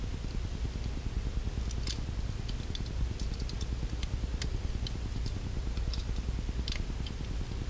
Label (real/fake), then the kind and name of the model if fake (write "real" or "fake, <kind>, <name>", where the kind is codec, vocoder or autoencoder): real